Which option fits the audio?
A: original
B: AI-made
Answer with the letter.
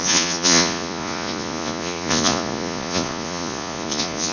B